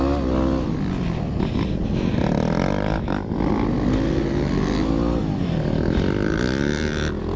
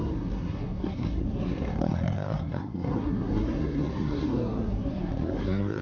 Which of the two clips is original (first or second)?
first